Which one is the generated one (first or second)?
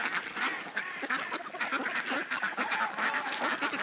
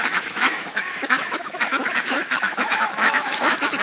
second